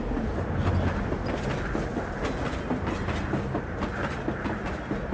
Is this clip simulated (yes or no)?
no